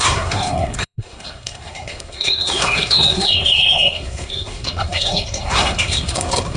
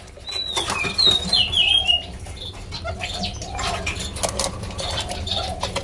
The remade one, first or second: first